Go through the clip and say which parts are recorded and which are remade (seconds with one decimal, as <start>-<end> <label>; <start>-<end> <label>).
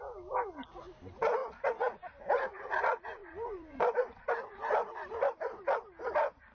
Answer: 0.0-3.2 recorded; 3.2-4.3 remade; 4.3-6.5 recorded